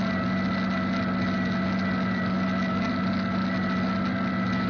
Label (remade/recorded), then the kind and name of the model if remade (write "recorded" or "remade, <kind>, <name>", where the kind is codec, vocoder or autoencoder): recorded